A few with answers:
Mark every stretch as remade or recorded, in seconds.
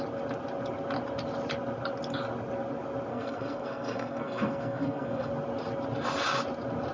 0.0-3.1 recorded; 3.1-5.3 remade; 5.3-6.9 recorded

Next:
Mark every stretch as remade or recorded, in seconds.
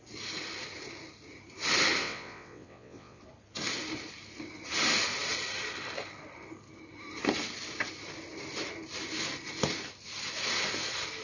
0.0-2.0 recorded; 2.0-3.2 remade; 3.2-11.2 recorded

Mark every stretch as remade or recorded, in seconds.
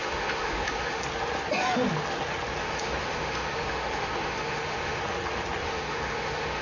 0.0-1.0 remade; 1.0-2.6 recorded; 2.6-5.0 remade; 5.0-5.6 recorded; 5.6-6.6 remade